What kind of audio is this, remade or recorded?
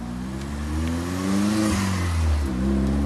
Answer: recorded